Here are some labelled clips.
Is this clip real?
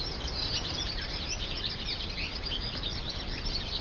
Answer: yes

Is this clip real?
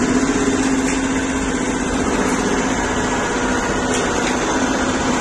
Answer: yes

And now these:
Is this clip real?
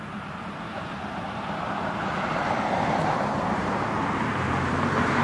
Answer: no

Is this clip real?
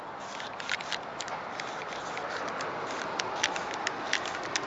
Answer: yes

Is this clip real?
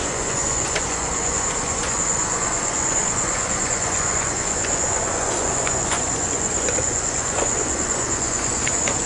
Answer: no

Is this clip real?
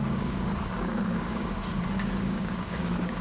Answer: no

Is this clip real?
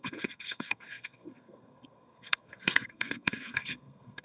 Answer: no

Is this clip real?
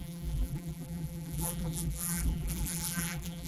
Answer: no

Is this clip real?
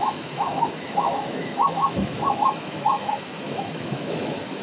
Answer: no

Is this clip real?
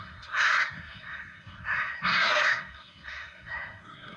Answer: no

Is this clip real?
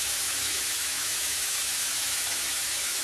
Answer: no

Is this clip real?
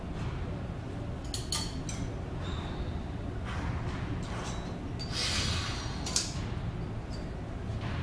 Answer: yes